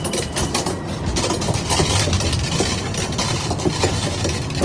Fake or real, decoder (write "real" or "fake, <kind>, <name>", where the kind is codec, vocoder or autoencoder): real